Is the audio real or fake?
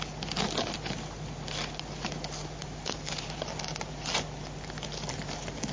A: real